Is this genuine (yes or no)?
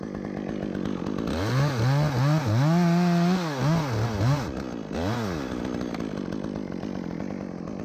yes